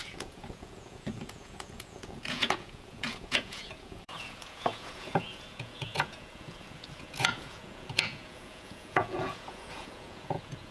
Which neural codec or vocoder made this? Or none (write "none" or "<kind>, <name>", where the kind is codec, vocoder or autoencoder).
vocoder, Vocos